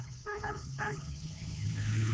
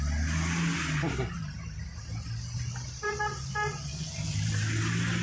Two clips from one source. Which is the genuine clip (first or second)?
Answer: second